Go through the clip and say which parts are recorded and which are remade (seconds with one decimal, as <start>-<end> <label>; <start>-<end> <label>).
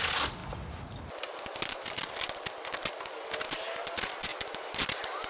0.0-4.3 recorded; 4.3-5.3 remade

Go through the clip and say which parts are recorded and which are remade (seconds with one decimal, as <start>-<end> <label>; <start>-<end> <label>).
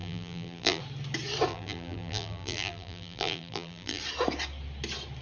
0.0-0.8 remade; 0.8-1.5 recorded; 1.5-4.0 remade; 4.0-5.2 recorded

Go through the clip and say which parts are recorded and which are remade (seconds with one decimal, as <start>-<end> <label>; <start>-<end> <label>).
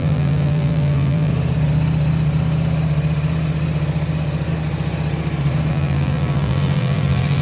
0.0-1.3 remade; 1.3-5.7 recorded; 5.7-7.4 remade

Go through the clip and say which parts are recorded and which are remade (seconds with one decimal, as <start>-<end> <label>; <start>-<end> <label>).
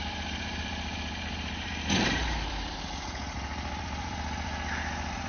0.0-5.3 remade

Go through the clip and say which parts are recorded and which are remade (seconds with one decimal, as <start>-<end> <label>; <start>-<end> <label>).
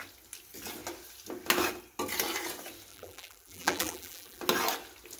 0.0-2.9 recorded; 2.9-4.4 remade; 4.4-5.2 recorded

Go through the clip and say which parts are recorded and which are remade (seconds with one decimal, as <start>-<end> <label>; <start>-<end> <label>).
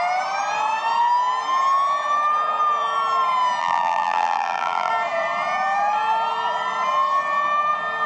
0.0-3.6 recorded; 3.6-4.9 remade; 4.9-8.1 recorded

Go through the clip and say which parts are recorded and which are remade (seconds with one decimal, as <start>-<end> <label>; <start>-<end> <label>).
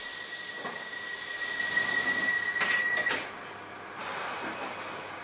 0.0-5.2 recorded